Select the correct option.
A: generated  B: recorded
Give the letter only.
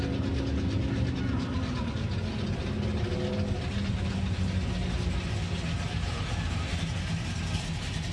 B